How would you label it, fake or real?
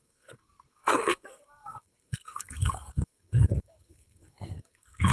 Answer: fake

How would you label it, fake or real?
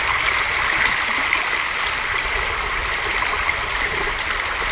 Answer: real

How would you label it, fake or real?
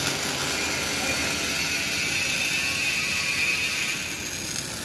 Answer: real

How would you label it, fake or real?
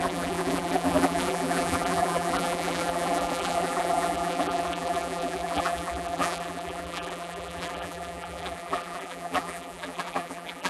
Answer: fake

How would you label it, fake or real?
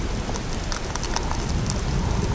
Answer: real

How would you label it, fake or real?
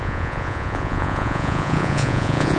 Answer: fake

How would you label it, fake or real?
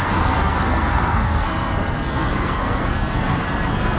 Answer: fake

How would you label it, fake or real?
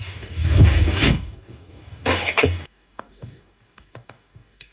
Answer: fake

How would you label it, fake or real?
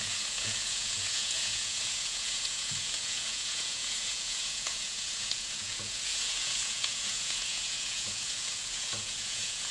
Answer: fake